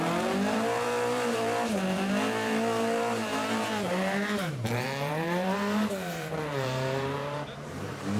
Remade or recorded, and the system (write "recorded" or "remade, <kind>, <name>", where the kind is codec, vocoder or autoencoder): remade, vocoder, BigVGAN v2